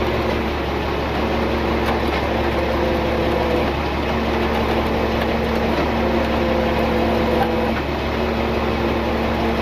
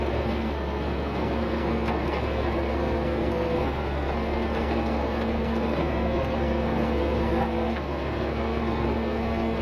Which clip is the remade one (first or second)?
second